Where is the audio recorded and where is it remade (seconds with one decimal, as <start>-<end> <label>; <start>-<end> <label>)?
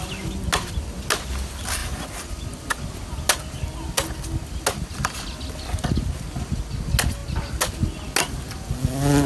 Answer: 0.0-9.3 recorded